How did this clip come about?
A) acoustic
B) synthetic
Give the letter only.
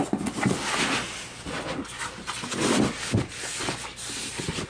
A